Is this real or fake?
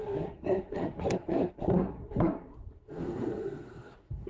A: fake